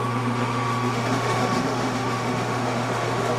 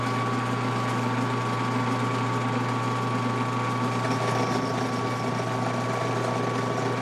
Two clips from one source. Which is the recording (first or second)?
second